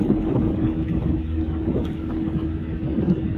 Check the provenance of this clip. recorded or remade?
remade